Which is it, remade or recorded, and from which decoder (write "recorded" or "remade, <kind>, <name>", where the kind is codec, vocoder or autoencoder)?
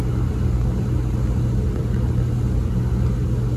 recorded